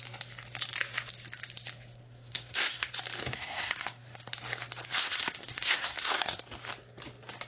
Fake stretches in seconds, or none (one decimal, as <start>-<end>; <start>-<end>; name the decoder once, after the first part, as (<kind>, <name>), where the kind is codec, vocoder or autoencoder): 2.0-2.9 (codec, SNAC); 3.3-4.3; 5.0-6.4